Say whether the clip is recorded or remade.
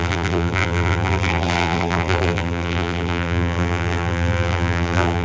remade